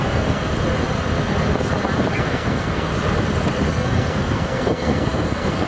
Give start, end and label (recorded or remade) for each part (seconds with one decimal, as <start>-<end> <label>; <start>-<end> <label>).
0.0-0.5 remade; 0.5-2.1 recorded; 2.1-2.9 remade; 2.9-3.7 recorded; 3.7-5.7 remade